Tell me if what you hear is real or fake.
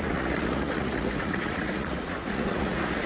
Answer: fake